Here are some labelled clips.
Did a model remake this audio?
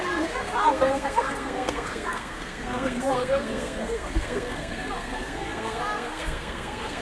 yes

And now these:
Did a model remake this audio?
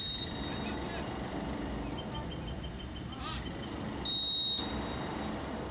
no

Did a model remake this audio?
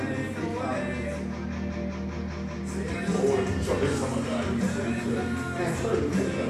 no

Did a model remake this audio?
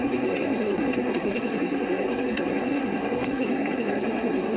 yes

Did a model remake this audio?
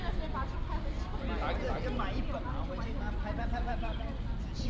no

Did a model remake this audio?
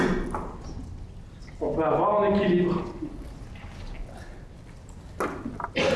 no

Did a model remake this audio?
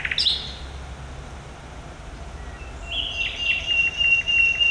no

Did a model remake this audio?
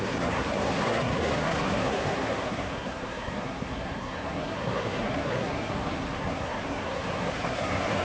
yes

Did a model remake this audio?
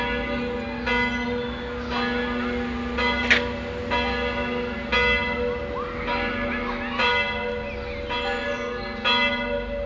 no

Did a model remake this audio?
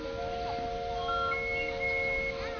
no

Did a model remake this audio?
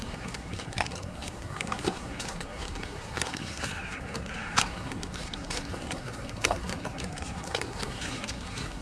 yes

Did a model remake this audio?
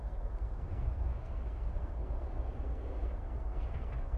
yes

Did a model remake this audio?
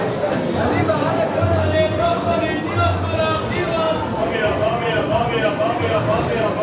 no